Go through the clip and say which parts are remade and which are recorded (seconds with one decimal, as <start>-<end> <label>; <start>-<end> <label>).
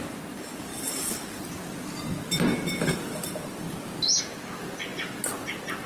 0.0-5.9 recorded